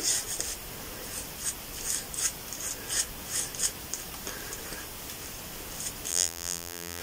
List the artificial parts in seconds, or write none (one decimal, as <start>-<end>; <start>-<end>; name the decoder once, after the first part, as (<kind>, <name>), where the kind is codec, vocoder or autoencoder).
6.1-7.0 (vocoder, BigVGAN v2)